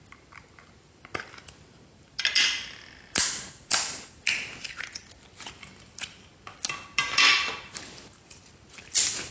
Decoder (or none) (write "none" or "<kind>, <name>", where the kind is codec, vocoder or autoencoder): none